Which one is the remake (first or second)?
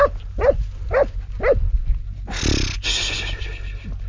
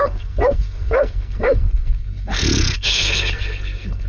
second